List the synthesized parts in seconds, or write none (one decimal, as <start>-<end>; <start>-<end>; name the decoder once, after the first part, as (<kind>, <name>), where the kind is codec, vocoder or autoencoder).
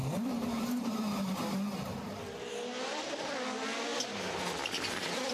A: none